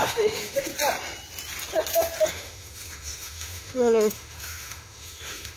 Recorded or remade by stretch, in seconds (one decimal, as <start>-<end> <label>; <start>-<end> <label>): 0.0-0.7 remade; 0.7-2.3 recorded; 2.3-5.6 remade